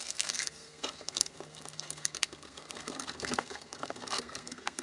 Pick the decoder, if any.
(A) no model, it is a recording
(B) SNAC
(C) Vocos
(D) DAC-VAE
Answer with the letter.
B